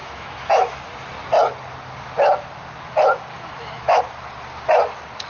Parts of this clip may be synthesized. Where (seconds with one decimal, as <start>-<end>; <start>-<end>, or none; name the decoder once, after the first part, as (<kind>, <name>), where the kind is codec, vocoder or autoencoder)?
0.0-0.8 (autoencoder, DAC-VAE); 3.3-4.0